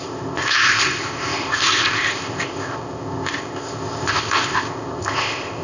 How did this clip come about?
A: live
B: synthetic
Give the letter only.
B